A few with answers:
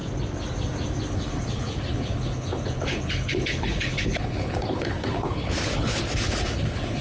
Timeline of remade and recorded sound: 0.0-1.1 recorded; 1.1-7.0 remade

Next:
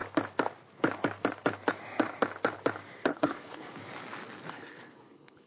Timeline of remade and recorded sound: 0.0-3.1 recorded; 3.1-3.8 remade; 3.8-4.5 recorded; 4.5-5.5 remade

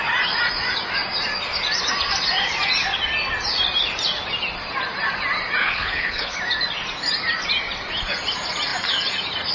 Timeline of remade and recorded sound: 0.0-5.6 recorded; 5.6-6.4 remade; 6.4-9.5 recorded

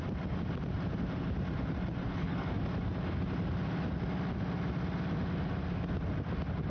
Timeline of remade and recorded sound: 0.0-2.0 recorded; 2.0-2.6 remade; 2.6-6.7 recorded